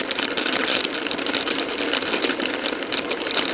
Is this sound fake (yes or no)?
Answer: yes